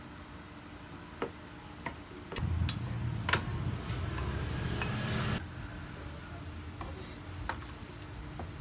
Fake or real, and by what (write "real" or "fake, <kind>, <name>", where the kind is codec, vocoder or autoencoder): real